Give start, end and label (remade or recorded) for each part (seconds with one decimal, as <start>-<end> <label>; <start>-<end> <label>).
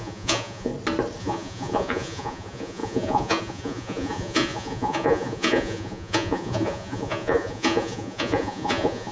0.0-0.7 remade; 0.7-1.2 recorded; 1.2-9.1 remade